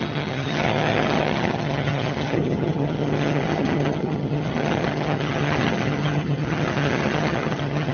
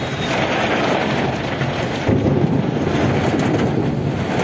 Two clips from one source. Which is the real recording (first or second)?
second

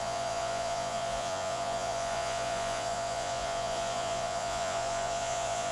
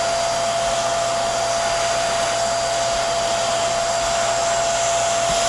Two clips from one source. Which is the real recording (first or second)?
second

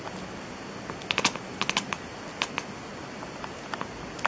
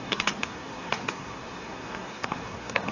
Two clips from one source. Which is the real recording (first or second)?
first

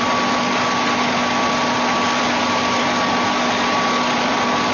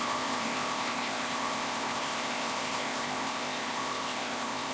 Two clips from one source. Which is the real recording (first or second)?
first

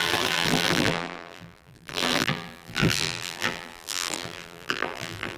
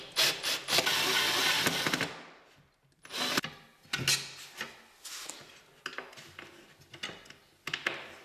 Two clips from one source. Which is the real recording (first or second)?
second